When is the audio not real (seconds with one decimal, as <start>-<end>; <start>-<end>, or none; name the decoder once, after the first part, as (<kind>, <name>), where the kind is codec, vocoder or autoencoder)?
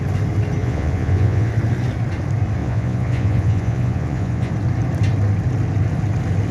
0.6-1.5 (vocoder, Vocos); 2.6-4.5